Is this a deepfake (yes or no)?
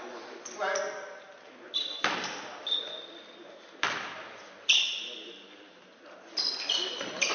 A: no